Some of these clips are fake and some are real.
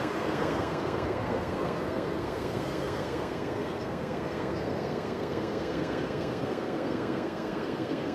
fake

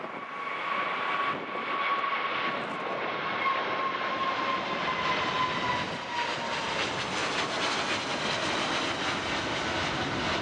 real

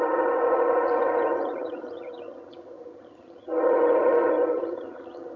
fake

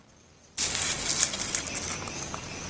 real